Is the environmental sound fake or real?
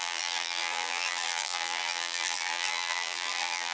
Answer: fake